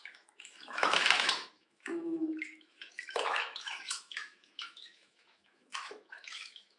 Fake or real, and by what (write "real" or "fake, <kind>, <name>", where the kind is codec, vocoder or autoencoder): fake, autoencoder, DAC-VAE